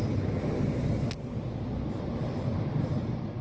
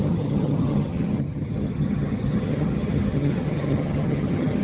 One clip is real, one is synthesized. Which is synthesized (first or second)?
second